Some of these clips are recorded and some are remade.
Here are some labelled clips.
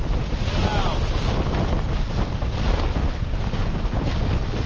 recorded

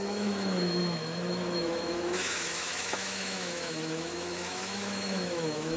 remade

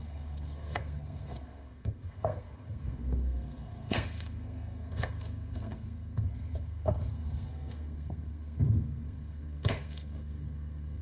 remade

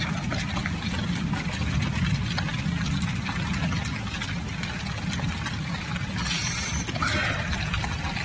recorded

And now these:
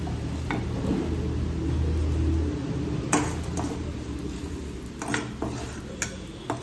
recorded